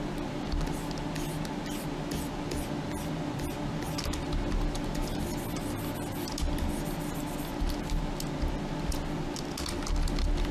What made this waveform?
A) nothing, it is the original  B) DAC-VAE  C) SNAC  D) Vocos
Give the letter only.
A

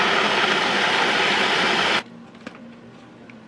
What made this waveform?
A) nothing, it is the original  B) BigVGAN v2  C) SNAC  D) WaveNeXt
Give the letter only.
A